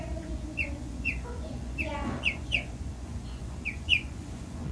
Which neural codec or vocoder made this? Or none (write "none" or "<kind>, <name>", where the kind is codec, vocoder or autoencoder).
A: vocoder, Vocos